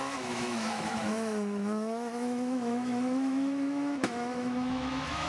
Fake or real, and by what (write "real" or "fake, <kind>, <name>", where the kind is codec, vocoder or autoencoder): fake, autoencoder, DAC-VAE